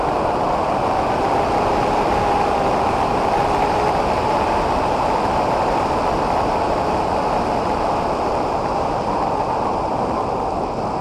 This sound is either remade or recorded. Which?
recorded